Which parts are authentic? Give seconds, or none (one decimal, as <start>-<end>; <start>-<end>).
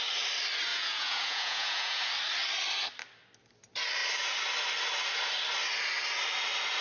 0.0-0.7; 2.1-6.8